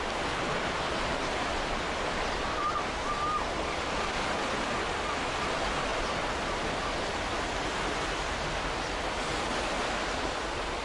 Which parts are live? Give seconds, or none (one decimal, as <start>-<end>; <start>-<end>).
0.0-10.8